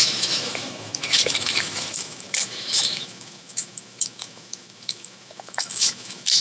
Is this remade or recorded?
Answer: remade